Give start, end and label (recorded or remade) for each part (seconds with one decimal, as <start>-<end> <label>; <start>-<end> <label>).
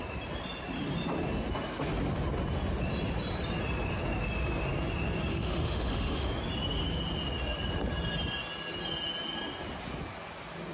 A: 0.0-5.3 recorded; 5.3-6.3 remade; 6.3-10.7 recorded